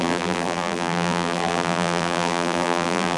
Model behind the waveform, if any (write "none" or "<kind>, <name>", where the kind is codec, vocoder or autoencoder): vocoder, BigVGAN v2